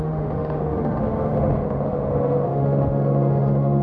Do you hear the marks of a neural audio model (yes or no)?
yes